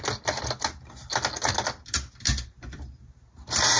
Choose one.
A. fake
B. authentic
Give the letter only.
B